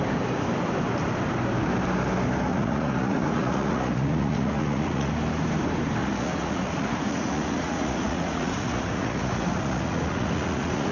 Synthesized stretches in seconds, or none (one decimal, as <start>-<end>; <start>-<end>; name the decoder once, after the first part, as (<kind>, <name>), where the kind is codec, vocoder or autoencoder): 2.5-5.1 (vocoder, Vocos); 6.0-10.9

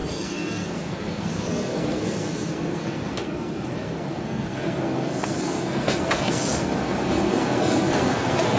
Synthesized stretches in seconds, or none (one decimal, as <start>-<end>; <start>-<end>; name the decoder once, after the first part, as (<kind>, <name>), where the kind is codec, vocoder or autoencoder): 0.0-8.6 (codec, SNAC)

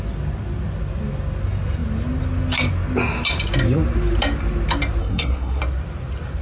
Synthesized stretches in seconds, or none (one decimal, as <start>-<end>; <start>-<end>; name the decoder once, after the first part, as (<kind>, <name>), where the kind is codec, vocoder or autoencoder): 5.0-5.6 (codec, SNAC)

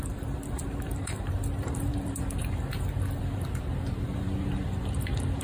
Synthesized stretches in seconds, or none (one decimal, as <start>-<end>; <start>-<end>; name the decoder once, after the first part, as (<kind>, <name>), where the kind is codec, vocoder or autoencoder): 0.0-5.4 (vocoder, BigVGAN v2)

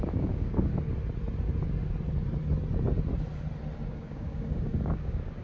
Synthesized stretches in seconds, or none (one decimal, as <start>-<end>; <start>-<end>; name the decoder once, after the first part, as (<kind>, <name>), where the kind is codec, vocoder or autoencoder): 0.0-0.7 (codec, DAC); 3.9-5.4

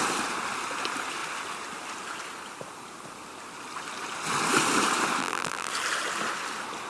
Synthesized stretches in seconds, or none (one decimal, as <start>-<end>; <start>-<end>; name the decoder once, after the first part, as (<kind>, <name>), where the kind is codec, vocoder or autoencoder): 5.2-5.7 (vocoder, BigVGAN v2)

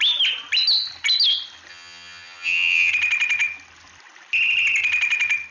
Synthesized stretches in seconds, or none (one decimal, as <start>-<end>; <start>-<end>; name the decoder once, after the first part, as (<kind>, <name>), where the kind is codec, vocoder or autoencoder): 1.7-2.9 (vocoder, HiFi-GAN)